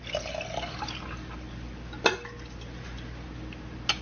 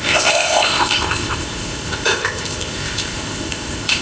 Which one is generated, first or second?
second